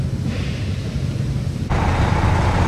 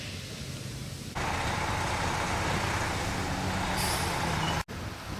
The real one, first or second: second